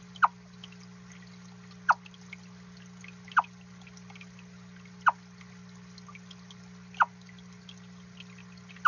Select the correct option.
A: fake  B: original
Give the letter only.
B